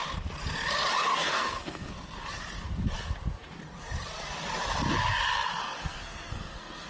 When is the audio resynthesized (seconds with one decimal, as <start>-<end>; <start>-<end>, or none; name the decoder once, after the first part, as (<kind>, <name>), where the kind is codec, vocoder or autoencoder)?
1.1-1.9 (codec, SNAC); 5.6-6.9